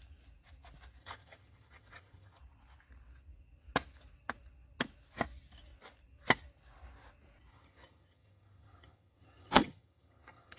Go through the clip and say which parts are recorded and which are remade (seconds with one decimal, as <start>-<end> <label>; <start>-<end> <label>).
0.0-1.0 recorded; 1.0-2.4 remade; 2.4-7.5 recorded; 7.5-10.6 remade